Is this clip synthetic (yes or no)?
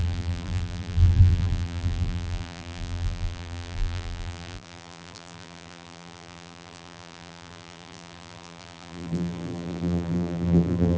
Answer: yes